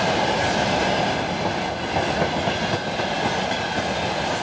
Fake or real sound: real